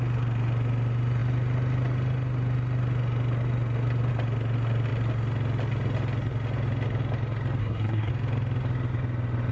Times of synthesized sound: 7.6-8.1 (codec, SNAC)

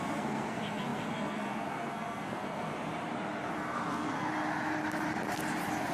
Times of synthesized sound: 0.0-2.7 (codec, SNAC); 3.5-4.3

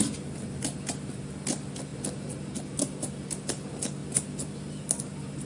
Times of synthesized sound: none